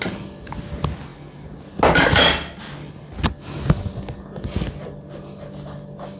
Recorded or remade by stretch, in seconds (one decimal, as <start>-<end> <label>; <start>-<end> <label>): 0.0-6.2 recorded